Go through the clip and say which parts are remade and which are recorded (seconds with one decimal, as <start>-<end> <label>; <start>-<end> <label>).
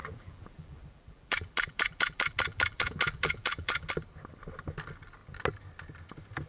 0.0-3.9 remade; 3.9-6.5 recorded